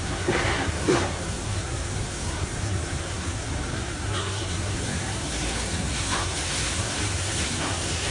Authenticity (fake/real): fake